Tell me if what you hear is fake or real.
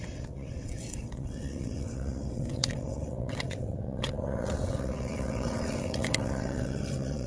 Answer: fake